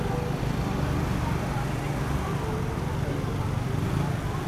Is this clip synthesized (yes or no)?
no